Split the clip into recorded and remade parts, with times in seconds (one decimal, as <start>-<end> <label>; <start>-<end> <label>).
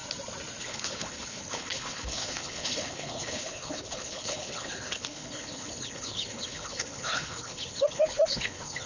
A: 0.0-0.6 recorded; 0.6-8.9 remade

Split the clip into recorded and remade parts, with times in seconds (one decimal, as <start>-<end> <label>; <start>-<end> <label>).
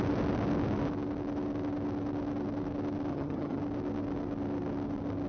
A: 0.0-3.1 recorded; 3.1-3.6 remade; 3.6-5.3 recorded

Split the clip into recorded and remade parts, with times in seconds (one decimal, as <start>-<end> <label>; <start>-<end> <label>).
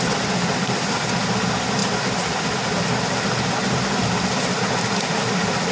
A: 0.0-5.7 recorded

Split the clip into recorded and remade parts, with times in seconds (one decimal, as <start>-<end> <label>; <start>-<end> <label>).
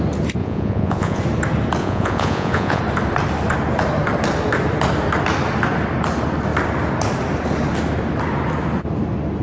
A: 0.0-0.4 recorded; 0.4-1.2 remade; 1.2-1.8 recorded; 1.8-2.8 remade; 2.8-9.4 recorded